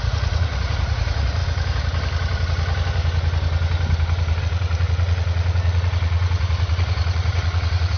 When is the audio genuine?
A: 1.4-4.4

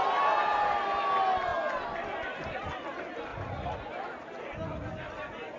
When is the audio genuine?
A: 0.0-3.3; 3.9-5.6